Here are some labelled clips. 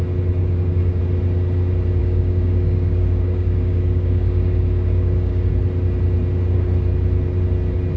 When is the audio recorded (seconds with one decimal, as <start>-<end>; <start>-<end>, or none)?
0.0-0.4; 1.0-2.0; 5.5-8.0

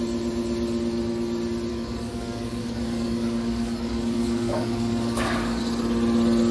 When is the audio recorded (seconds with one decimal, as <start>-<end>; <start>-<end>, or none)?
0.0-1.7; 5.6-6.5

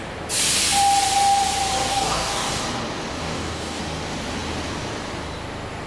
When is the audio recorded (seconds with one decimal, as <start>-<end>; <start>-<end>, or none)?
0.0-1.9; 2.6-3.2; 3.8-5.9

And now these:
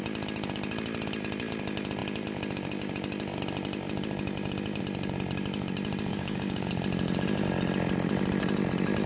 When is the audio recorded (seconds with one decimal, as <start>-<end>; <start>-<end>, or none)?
0.0-6.1; 6.7-9.1

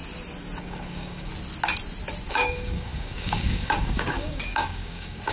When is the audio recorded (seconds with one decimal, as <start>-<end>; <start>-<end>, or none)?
0.0-0.6; 1.3-2.3

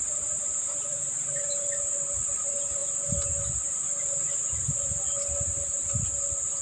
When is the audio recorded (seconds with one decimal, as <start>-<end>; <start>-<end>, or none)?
0.0-6.6